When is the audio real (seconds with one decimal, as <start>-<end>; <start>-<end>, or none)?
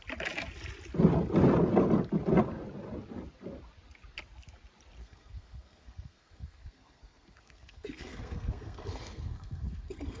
0.0-5.0